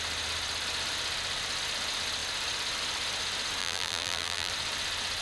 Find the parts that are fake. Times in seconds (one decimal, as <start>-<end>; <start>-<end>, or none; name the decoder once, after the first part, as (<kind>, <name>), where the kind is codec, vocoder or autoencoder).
3.6-4.5 (vocoder, BigVGAN v2)